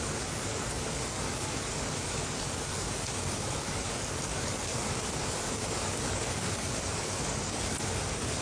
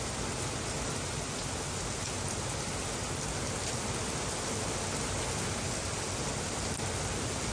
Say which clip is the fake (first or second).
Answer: first